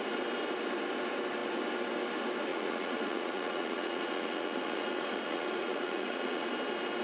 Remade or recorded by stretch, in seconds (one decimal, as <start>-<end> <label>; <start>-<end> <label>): 0.0-2.5 recorded; 2.5-6.5 remade; 6.5-7.0 recorded